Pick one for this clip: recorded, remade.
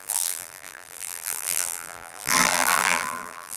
remade